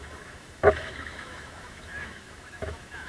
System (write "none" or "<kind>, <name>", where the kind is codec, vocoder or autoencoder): autoencoder, DAC-VAE